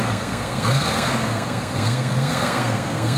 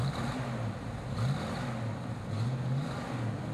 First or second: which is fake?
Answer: first